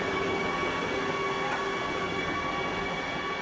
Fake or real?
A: real